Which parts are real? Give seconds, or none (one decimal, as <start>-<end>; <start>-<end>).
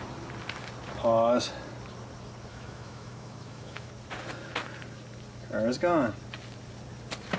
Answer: 0.0-2.5; 3.9-7.4